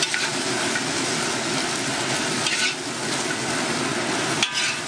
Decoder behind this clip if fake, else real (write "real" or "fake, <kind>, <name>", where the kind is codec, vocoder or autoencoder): real